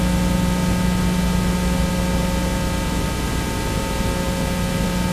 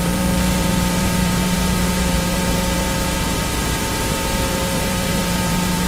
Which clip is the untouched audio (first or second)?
first